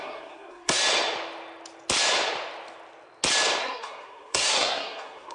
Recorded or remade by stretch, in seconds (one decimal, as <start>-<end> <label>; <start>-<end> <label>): 0.0-0.8 remade; 0.8-3.6 recorded; 3.6-5.3 remade